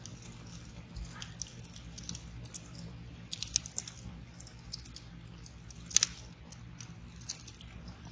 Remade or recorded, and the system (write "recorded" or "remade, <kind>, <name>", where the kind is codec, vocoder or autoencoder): recorded